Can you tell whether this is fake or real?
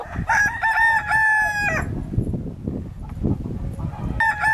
real